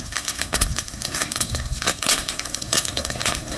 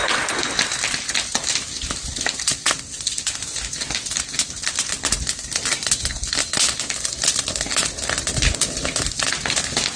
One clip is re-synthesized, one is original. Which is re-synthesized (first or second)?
first